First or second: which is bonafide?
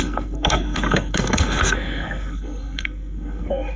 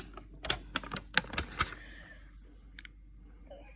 second